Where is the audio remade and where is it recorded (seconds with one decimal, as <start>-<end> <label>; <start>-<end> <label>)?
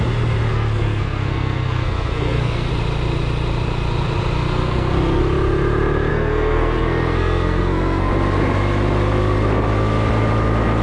0.0-0.5 recorded; 0.5-2.7 remade; 2.7-4.6 recorded; 4.6-5.2 remade; 5.2-6.1 recorded; 6.1-8.1 remade; 8.1-10.8 recorded